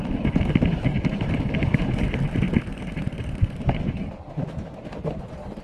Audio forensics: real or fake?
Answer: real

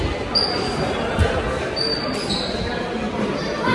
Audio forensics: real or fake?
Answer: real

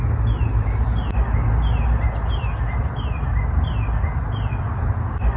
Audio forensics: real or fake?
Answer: real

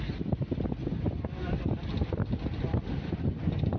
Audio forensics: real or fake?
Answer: real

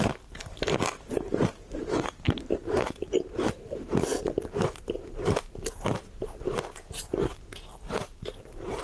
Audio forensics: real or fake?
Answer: fake